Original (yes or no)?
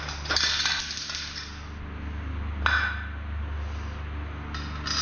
yes